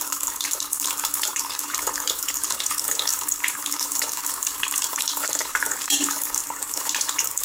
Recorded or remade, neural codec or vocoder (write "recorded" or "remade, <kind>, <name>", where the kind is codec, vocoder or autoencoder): remade, codec, DAC